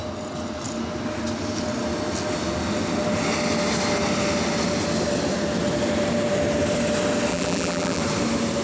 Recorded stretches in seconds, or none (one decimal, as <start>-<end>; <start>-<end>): 0.0-7.3; 8.0-8.6